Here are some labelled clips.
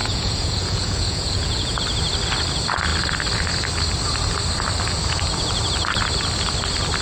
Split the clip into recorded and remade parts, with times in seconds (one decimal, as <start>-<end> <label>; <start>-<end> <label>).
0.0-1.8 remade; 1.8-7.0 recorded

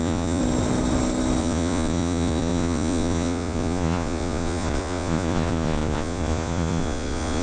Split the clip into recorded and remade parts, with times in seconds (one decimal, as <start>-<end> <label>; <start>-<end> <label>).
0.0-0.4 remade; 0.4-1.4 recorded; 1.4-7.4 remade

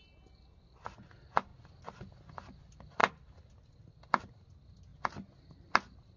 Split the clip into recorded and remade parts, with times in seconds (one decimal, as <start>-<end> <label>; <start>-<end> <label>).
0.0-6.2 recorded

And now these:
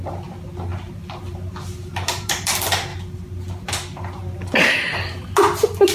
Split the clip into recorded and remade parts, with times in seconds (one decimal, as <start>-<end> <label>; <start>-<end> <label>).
0.0-5.9 recorded